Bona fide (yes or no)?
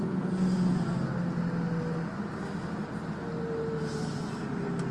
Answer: yes